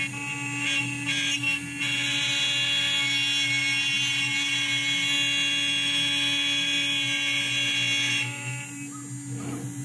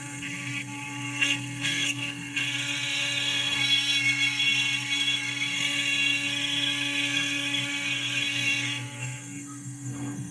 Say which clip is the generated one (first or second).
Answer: second